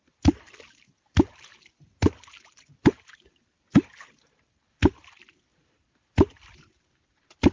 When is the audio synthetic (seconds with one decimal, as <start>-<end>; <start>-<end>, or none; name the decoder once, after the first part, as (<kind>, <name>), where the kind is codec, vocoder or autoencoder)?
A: none

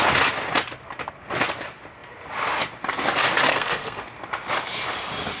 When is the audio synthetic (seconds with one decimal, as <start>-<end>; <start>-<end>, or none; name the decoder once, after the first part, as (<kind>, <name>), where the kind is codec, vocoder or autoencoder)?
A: 3.5-4.0 (codec, SNAC)

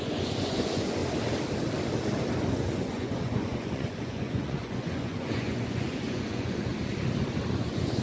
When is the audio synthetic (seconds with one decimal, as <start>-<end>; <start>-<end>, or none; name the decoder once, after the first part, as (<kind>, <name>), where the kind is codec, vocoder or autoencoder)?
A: 0.0-1.0 (vocoder, Vocos); 2.5-6.7; 7.5-8.0

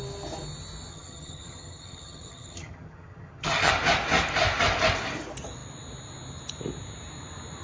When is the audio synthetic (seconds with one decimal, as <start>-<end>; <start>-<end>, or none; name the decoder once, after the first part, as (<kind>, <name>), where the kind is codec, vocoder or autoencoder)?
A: 0.9-3.7 (vocoder, HiFi-GAN)

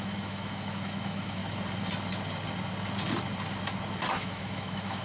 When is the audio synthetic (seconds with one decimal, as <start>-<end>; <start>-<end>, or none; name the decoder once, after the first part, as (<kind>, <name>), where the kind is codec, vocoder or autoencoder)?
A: 0.0-1.4 (autoencoder, DAC-VAE); 4.1-5.0

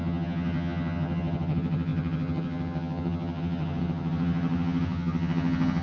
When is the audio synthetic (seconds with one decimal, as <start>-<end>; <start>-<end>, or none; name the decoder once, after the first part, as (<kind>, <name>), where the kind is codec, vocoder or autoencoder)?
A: 0.0-5.8 (vocoder, HiFi-GAN)

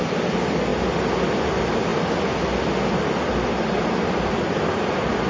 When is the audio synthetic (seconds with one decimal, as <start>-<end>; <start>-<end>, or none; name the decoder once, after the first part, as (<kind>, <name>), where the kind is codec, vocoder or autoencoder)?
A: none